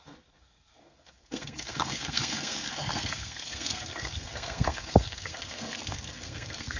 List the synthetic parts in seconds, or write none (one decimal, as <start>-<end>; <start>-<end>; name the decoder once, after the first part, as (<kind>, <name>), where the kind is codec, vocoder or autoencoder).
0.0-6.8 (codec, SNAC)